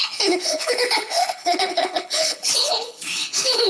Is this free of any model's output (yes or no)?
no